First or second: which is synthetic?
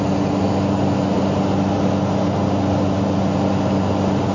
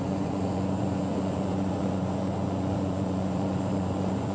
second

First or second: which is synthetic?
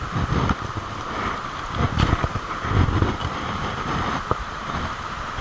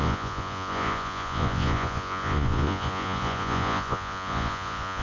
second